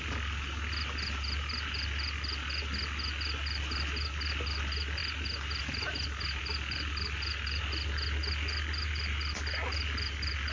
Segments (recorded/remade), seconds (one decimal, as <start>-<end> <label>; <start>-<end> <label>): 0.0-10.5 recorded